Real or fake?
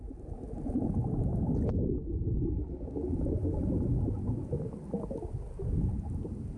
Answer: real